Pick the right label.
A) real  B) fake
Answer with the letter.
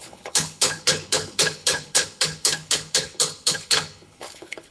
B